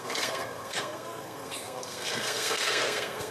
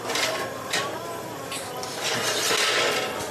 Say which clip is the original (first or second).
second